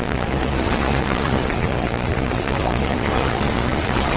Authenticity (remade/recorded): remade